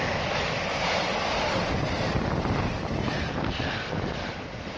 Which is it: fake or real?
real